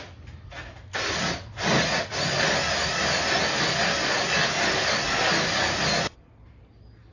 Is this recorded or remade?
recorded